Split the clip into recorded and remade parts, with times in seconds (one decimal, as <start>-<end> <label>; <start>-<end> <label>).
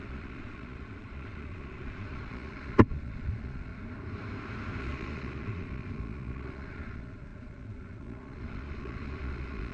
0.0-3.7 remade; 3.7-4.8 recorded; 4.8-9.7 remade